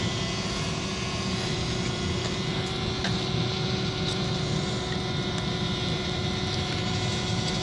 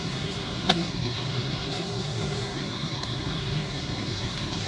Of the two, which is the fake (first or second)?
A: second